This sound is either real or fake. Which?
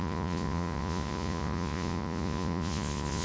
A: fake